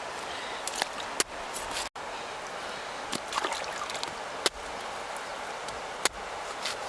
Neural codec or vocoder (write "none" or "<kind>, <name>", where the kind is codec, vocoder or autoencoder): none